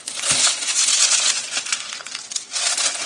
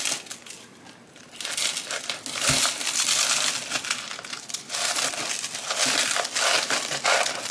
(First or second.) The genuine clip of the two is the second